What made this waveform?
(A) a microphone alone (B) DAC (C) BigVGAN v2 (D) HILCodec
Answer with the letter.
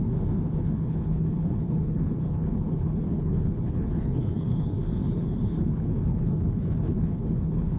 D